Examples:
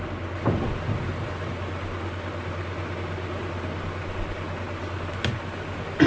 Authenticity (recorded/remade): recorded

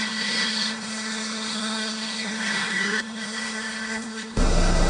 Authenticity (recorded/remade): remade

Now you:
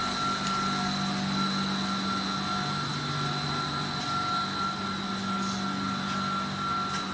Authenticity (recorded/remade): recorded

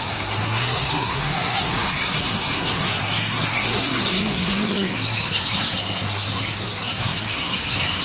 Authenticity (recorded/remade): remade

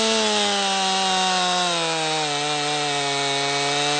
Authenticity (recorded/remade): recorded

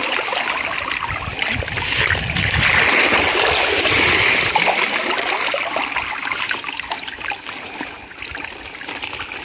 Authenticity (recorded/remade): recorded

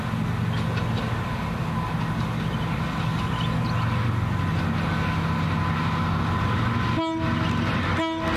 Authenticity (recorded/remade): recorded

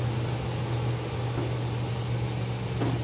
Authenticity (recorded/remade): recorded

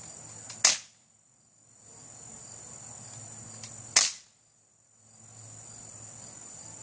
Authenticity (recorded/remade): recorded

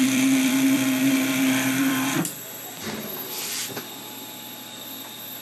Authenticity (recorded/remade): remade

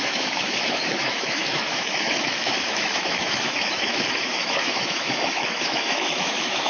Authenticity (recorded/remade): remade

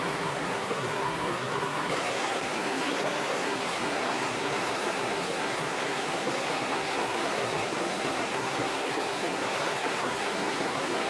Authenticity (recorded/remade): remade